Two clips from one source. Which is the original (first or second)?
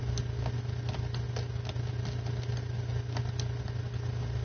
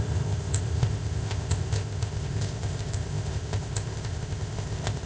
first